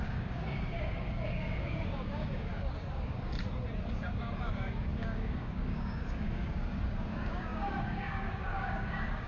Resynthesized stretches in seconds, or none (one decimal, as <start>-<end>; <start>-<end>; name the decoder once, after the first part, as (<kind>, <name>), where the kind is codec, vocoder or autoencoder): 0.0-3.3 (codec, DAC); 3.9-9.3